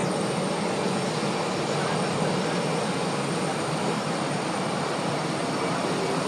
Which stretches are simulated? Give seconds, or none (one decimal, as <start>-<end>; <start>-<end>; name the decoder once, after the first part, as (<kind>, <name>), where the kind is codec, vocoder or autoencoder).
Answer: 0.0-0.8 (vocoder, BigVGAN v2); 3.5-4.8